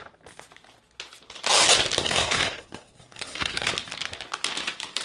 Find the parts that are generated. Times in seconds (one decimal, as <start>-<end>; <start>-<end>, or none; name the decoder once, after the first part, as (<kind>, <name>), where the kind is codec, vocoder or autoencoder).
2.0-3.7 (codec, SNAC)